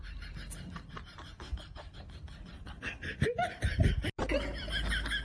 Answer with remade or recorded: recorded